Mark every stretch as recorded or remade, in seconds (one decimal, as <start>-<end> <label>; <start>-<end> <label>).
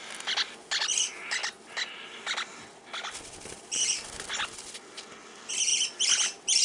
0.0-6.6 recorded